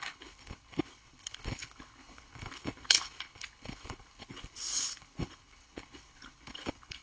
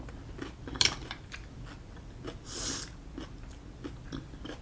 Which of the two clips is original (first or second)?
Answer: second